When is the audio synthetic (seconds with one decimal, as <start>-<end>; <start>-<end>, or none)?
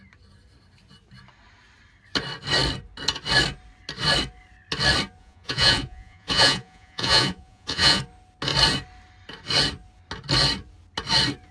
5.2-8.0